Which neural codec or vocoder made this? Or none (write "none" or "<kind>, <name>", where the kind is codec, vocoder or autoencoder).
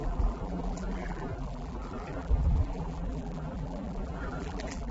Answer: vocoder, BigVGAN v2